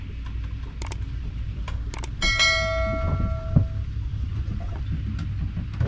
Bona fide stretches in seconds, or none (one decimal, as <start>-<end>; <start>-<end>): 0.0-4.3; 4.8-5.9